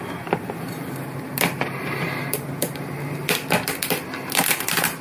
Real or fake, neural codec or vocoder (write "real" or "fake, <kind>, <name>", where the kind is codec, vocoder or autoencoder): real